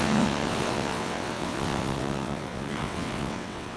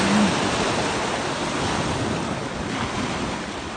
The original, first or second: second